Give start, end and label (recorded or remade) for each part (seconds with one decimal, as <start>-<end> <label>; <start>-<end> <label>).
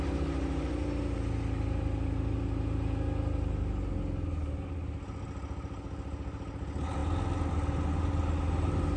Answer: 0.0-9.0 recorded